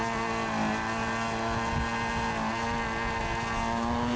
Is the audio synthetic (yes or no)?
no